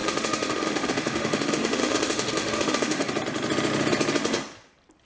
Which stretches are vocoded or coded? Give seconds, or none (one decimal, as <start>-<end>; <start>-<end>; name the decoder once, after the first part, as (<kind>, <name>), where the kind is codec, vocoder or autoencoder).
0.0-3.1 (autoencoder, DAC-VAE)